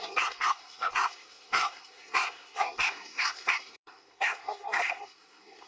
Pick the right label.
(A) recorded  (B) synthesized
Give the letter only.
B